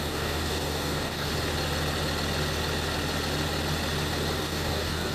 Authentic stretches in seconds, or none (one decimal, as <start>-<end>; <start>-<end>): 1.3-4.4